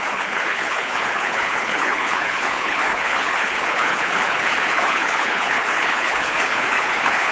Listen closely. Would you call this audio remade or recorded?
remade